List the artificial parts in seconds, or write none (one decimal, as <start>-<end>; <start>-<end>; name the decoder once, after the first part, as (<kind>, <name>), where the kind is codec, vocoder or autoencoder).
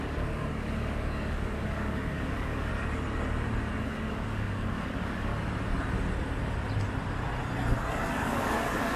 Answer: 0.0-2.7 (codec, DAC); 3.8-5.3; 8.1-9.0